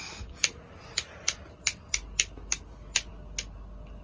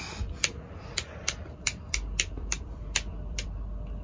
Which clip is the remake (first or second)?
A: second